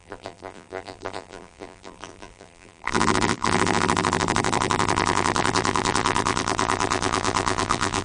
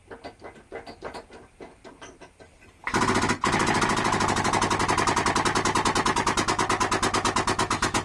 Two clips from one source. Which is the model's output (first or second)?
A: first